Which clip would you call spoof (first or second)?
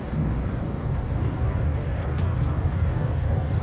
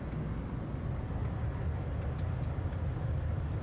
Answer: first